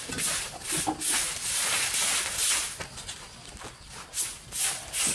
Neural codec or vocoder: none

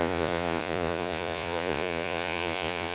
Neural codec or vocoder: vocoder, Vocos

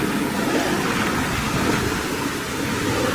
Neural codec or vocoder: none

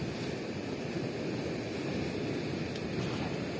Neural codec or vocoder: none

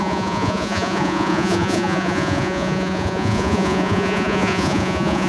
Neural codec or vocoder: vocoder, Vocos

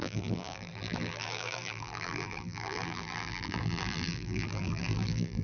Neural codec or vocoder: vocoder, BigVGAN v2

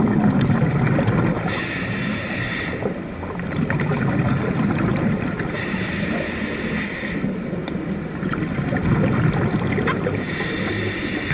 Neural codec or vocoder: none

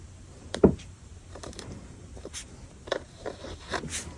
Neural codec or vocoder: vocoder, BigVGAN v2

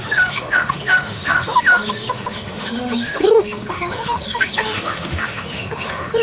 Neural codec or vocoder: autoencoder, DAC-VAE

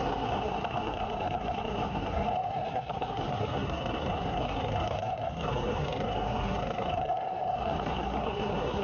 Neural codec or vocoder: codec, SNAC